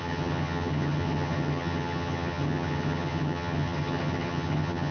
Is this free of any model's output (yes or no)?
no